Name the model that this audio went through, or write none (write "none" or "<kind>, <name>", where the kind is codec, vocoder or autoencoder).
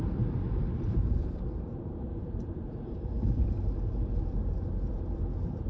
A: vocoder, BigVGAN v2